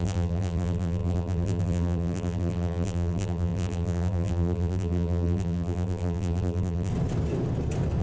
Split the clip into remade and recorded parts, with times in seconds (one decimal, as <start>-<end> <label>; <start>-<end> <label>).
0.0-6.9 remade; 6.9-8.0 recorded